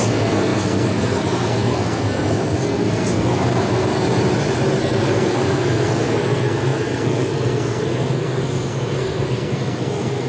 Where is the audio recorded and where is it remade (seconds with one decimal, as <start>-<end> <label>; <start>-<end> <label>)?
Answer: 0.0-3.9 remade; 3.9-4.8 recorded; 4.8-10.3 remade